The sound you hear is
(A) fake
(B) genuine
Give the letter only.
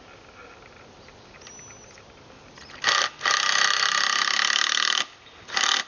B